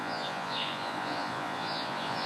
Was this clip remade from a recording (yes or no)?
yes